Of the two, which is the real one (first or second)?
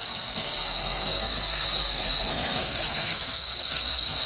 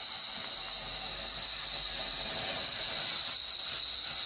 second